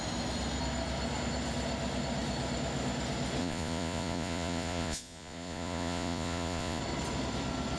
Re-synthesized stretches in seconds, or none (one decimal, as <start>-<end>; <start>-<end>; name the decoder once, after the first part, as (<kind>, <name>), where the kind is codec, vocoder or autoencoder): 3.4-6.8 (vocoder, Vocos)